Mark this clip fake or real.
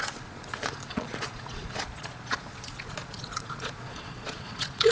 fake